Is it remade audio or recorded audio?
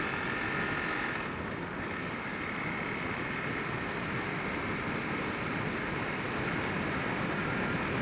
recorded